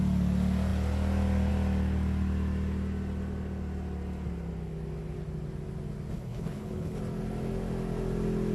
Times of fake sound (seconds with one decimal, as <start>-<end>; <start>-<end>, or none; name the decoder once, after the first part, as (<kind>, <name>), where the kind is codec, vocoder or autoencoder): 6.1-7.0 (codec, HILCodec)